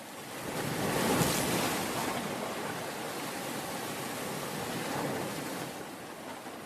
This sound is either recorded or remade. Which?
recorded